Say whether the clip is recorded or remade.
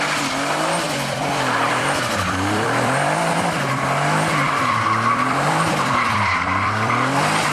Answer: remade